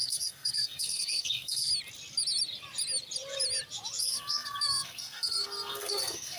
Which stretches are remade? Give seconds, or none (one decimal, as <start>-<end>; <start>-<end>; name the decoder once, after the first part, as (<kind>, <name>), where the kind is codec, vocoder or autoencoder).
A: 0.0-1.7 (codec, SNAC); 4.0-6.4